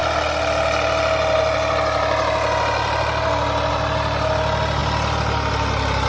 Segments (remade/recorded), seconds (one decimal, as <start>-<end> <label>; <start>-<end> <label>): 0.0-6.1 recorded